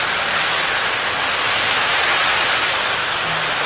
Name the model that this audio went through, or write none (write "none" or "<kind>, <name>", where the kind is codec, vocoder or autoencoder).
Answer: none